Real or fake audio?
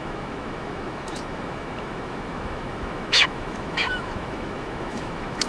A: fake